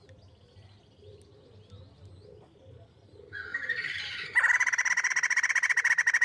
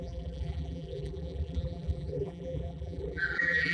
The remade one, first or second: second